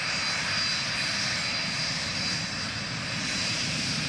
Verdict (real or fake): real